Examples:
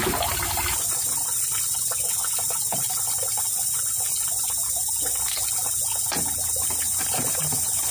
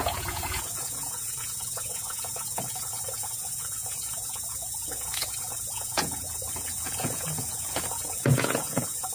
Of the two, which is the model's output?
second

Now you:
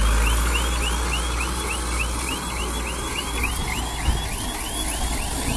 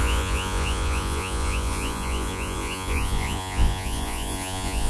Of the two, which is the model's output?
second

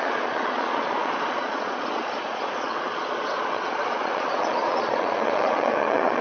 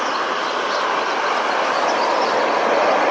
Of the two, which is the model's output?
first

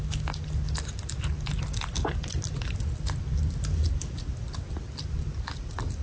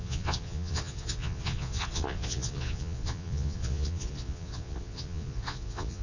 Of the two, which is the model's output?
second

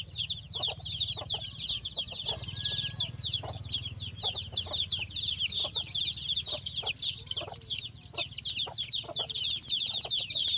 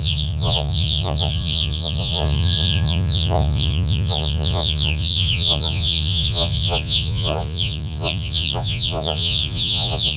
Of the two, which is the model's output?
second